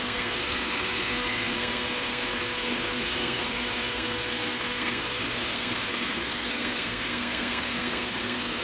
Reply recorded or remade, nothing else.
remade